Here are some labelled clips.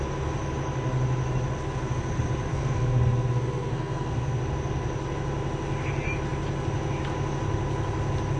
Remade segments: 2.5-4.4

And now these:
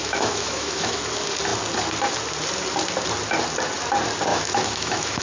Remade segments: 0.0-1.0; 4.3-5.2

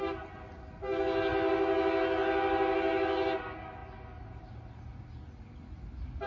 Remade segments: none